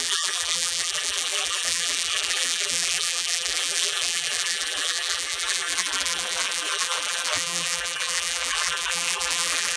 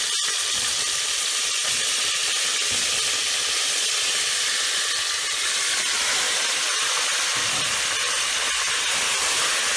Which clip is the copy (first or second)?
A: first